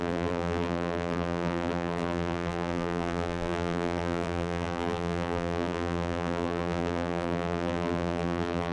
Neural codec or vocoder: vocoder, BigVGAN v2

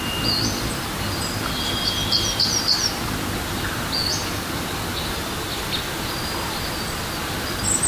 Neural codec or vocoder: none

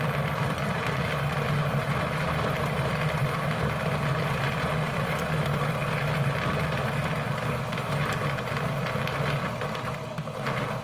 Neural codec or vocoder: none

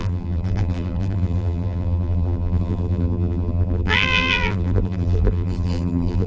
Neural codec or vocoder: vocoder, BigVGAN v2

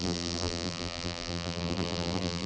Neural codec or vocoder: vocoder, BigVGAN v2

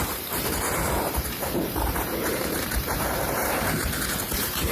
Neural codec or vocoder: vocoder, BigVGAN v2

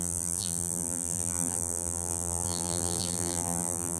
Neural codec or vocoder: vocoder, BigVGAN v2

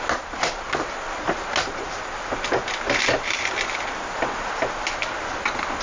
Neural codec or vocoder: none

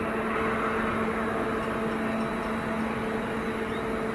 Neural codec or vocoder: none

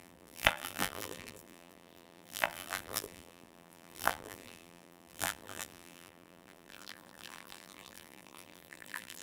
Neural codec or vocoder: vocoder, BigVGAN v2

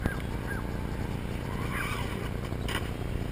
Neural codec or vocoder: none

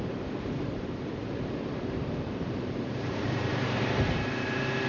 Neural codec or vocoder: vocoder, BigVGAN v2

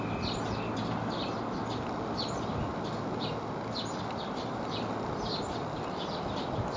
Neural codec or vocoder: none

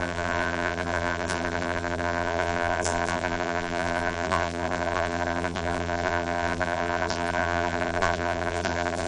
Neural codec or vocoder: vocoder, BigVGAN v2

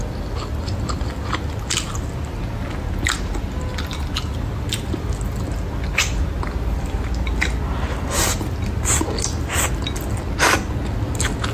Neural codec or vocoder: none